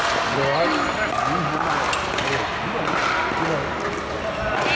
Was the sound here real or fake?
real